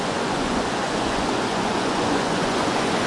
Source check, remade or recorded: remade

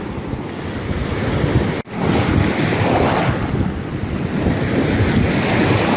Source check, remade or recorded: recorded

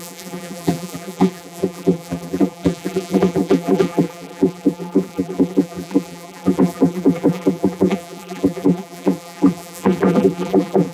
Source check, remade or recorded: remade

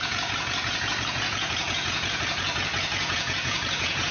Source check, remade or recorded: remade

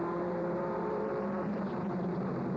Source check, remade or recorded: remade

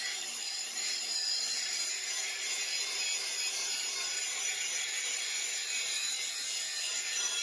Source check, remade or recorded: remade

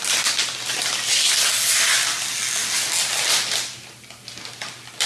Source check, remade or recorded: recorded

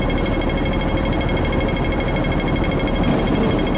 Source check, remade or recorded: recorded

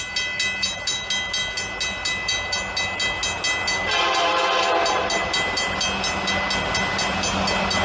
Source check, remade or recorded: recorded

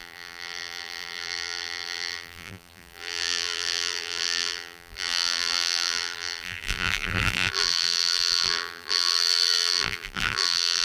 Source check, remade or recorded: remade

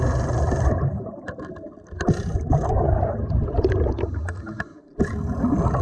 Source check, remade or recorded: recorded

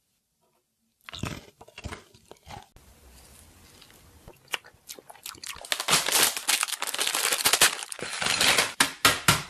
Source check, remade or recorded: recorded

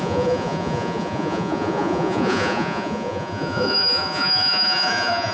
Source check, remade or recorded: remade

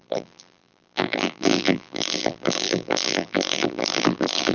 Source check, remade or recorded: remade